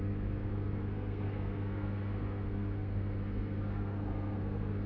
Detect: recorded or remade remade